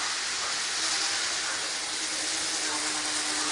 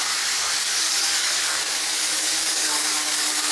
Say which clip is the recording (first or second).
first